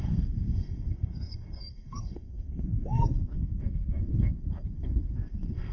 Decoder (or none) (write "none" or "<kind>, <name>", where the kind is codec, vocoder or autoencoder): codec, SNAC